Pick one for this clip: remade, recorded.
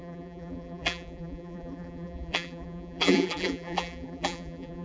remade